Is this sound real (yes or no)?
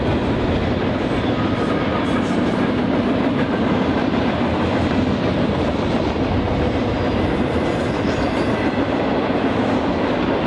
yes